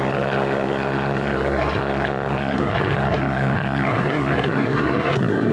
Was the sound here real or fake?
fake